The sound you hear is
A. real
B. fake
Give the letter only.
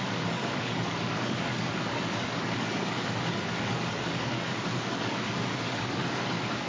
B